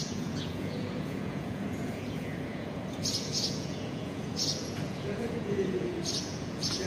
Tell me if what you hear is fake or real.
fake